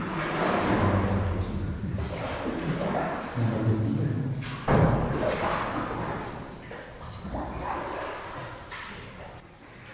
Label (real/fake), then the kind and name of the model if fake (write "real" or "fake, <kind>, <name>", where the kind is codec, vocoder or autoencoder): real